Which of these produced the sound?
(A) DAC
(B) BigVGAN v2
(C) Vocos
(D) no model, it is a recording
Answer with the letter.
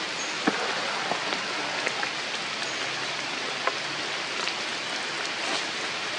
D